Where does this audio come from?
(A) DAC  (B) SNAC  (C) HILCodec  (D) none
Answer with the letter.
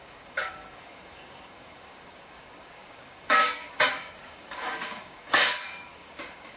A